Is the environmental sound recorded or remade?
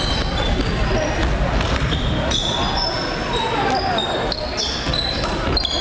recorded